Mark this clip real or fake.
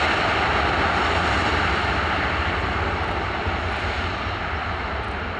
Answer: real